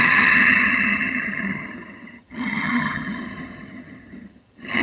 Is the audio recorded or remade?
remade